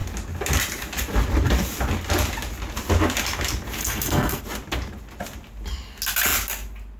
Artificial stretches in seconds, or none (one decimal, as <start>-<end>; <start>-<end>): 3.8-4.4